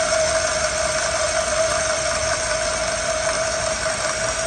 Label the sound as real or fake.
real